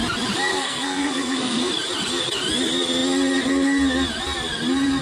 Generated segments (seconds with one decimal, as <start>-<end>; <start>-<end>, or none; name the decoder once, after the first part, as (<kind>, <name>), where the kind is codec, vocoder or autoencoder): 0.5-1.7 (codec, SNAC)